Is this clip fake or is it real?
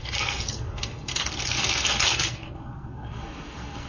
fake